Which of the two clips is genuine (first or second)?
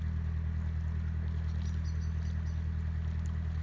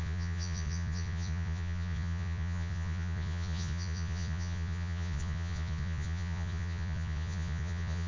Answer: first